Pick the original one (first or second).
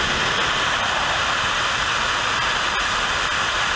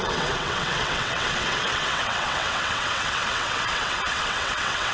first